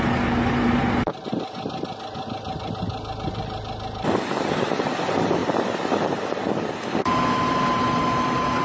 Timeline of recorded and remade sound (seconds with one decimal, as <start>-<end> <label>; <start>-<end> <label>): 0.0-8.6 recorded